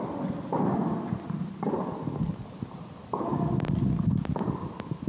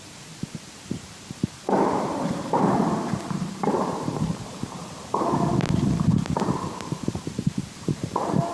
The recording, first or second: first